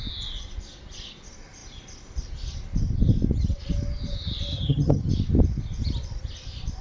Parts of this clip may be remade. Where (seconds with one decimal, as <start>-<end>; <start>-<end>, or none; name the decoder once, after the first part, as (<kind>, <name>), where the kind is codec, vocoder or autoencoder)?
4.5-5.1 (vocoder, HiFi-GAN)